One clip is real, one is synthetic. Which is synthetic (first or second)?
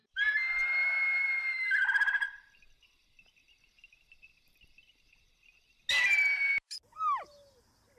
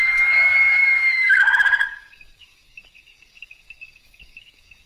second